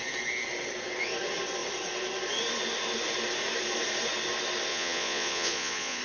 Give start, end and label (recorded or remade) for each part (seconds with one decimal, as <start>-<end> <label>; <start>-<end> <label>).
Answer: 0.0-4.7 recorded; 4.7-6.0 remade